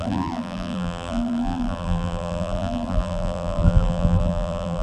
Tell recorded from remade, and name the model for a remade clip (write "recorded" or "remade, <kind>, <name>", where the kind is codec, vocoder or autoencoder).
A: remade, vocoder, BigVGAN v2